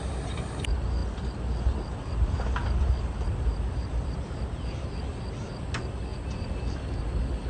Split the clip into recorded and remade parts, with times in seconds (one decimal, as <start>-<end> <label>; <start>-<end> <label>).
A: 0.0-2.6 recorded; 2.6-5.5 remade; 5.5-6.1 recorded; 6.1-7.0 remade; 7.0-7.5 recorded